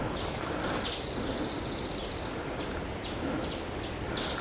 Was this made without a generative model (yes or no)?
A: yes